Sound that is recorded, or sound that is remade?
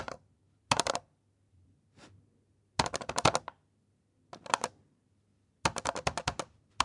recorded